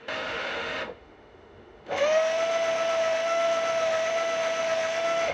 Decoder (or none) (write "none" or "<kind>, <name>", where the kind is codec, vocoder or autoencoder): autoencoder, DAC-VAE